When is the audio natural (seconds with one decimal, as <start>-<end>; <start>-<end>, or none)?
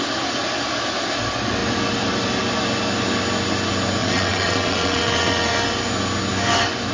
0.0-4.0; 5.5-6.9